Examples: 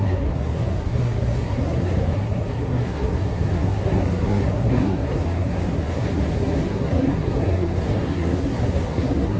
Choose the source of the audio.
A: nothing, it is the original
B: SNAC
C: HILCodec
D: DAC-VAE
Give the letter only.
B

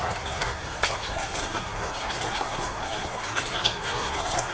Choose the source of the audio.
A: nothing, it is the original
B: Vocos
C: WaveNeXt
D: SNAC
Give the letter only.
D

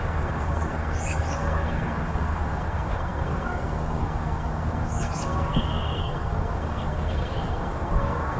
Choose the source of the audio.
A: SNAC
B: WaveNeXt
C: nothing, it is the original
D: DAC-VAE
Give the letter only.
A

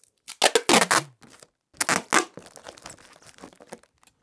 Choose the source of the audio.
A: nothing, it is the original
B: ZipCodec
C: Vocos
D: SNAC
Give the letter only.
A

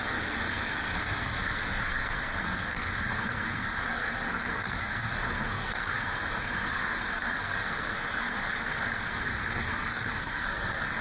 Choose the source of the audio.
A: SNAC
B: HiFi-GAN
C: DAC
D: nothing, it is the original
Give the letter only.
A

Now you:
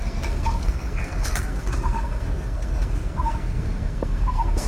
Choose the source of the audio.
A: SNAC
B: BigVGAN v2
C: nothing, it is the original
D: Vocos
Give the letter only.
A